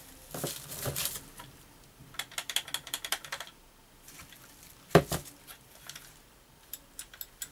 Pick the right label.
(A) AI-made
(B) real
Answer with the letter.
B